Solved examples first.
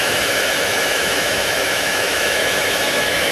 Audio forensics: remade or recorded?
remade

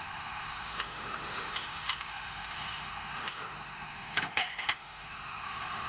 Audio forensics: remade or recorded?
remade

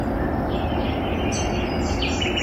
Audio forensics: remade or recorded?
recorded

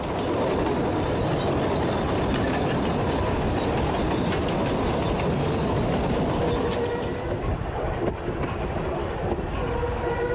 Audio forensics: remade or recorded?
recorded